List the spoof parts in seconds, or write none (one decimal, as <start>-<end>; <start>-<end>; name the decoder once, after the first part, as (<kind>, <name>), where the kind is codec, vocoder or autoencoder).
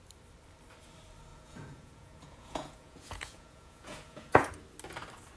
1.3-4.5 (vocoder, Vocos)